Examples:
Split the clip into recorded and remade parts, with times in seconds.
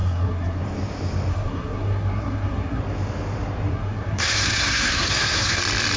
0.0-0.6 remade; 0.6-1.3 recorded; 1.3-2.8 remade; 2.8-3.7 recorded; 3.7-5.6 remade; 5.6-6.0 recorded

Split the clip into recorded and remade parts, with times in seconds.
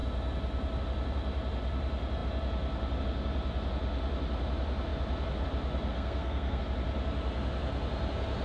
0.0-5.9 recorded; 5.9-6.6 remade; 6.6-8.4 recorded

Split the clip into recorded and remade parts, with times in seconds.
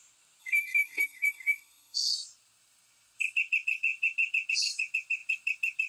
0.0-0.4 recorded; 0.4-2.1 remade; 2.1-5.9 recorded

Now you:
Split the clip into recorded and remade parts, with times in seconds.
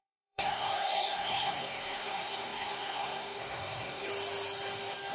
0.0-4.1 remade; 4.1-5.1 recorded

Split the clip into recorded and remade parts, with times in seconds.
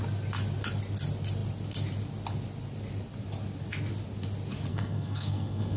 0.0-4.7 recorded; 4.7-5.8 remade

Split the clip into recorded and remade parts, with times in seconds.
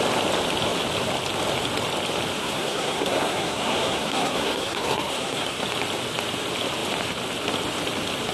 0.0-2.4 recorded; 2.4-5.6 remade; 5.6-8.3 recorded